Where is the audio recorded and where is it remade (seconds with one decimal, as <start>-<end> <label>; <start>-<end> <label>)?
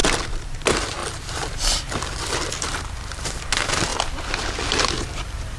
0.0-1.0 recorded; 1.0-3.4 remade; 3.4-3.9 recorded; 3.9-5.6 remade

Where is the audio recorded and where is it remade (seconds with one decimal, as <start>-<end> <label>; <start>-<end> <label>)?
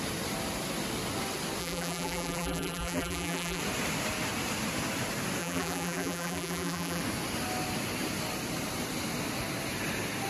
0.0-1.6 recorded; 1.6-3.6 remade; 3.6-5.4 recorded; 5.4-7.0 remade; 7.0-10.3 recorded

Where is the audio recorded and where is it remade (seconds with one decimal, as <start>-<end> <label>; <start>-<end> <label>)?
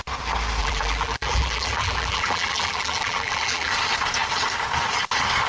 0.0-0.6 recorded; 0.6-3.7 remade; 3.7-5.5 recorded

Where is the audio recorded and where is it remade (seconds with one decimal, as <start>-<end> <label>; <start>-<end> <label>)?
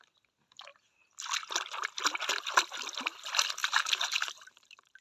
0.0-3.6 recorded; 3.6-5.0 remade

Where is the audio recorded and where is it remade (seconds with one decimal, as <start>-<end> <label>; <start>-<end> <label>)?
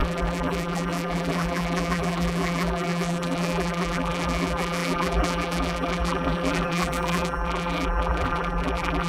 0.0-9.1 remade